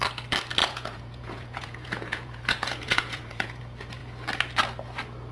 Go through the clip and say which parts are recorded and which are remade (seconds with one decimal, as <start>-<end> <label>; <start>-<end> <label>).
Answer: 0.0-0.6 recorded; 0.6-3.6 remade; 3.6-5.3 recorded